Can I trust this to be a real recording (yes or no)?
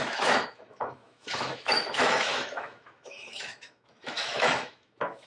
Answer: no